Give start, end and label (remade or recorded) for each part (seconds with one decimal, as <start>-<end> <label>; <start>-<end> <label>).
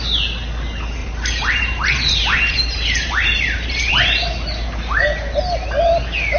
0.0-1.0 recorded; 1.0-3.9 remade; 3.9-6.4 recorded